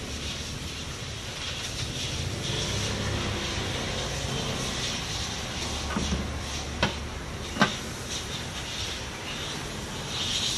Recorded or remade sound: recorded